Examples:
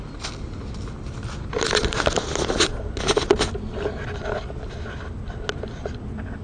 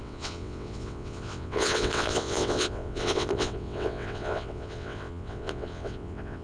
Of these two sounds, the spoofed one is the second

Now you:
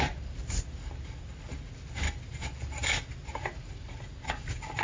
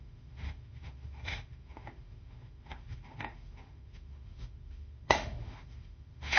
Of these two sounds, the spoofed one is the second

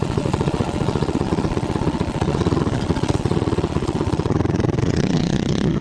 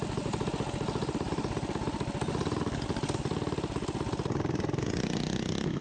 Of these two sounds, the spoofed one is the first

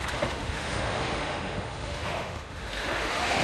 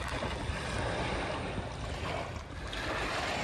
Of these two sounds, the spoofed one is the first